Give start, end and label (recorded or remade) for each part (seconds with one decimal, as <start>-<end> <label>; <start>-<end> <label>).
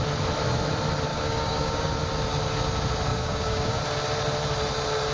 0.0-1.1 recorded; 1.1-1.9 remade; 1.9-3.1 recorded; 3.1-3.8 remade; 3.8-5.1 recorded